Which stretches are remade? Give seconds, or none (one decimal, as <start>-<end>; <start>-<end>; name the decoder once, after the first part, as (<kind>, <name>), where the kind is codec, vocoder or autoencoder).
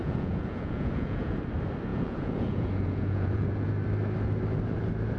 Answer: 0.0-1.4 (vocoder, Vocos); 1.9-3.7